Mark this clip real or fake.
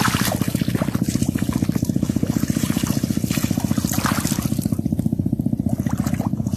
real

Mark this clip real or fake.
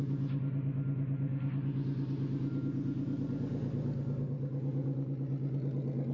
real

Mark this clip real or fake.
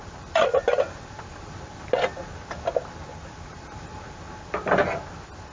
real